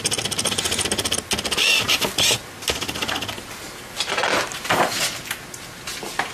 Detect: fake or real real